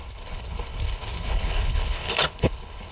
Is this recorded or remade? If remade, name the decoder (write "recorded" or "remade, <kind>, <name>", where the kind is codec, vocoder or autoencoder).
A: remade, codec, HILCodec